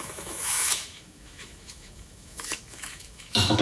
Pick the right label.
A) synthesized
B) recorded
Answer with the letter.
A